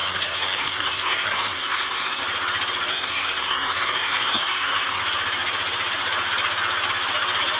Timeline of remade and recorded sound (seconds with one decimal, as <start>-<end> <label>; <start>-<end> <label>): 0.0-2.2 remade; 2.2-2.9 recorded; 2.9-5.0 remade; 5.0-7.6 recorded

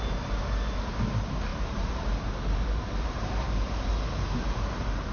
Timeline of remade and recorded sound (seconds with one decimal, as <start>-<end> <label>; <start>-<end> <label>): 0.0-1.5 recorded; 1.5-4.0 remade; 4.0-5.1 recorded

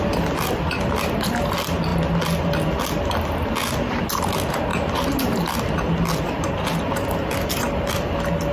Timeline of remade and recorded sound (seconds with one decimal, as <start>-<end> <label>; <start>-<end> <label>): 0.0-8.5 recorded

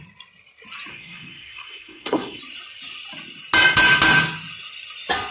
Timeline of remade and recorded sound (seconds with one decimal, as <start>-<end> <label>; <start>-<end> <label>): 0.0-0.9 recorded; 0.9-2.4 remade; 2.4-5.3 recorded

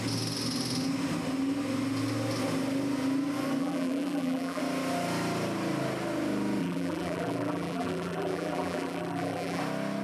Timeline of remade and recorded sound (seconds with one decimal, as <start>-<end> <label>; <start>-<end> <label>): 0.0-3.6 recorded; 3.6-4.6 remade; 4.6-6.6 recorded; 6.6-9.6 remade; 9.6-10.0 recorded

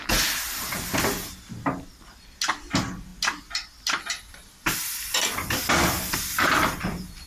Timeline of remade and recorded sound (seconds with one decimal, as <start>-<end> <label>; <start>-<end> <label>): 0.0-7.3 recorded

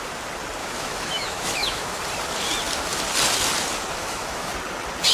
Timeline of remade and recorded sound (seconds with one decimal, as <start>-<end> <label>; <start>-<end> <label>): 0.0-0.6 recorded; 0.6-2.0 remade; 2.0-4.0 recorded; 4.0-4.5 remade; 4.5-5.1 recorded